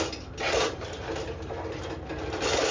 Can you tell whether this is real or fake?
real